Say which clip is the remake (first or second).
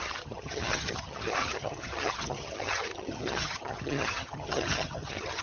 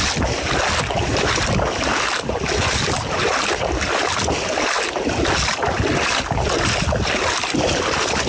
first